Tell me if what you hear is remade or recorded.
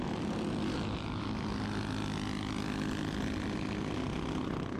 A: recorded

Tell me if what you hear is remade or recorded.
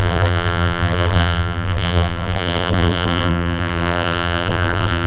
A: remade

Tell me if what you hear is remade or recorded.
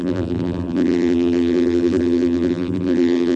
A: remade